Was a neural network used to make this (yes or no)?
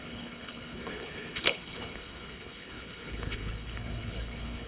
yes